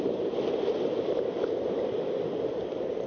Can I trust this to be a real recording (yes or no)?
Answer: yes